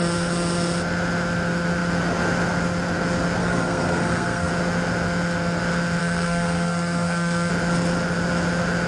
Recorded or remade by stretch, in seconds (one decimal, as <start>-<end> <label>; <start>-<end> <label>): 0.0-3.4 recorded; 3.4-4.5 remade; 4.5-6.0 recorded; 6.0-7.5 remade; 7.5-8.9 recorded